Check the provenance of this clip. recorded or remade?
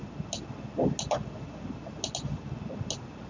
recorded